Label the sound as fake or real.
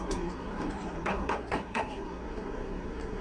fake